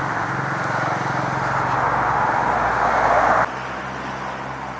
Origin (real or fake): real